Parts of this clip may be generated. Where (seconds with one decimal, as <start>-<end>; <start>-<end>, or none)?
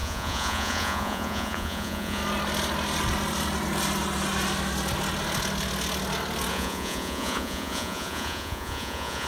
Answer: 0.0-2.2; 6.5-9.3